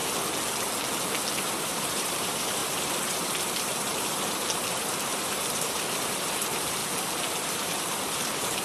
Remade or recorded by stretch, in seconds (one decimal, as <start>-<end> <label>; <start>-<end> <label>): 0.0-1.4 recorded; 1.4-6.8 remade; 6.8-7.5 recorded; 7.5-8.6 remade